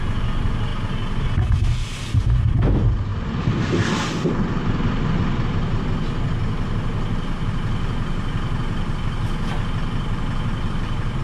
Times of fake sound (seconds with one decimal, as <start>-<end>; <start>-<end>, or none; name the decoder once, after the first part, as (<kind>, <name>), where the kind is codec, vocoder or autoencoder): none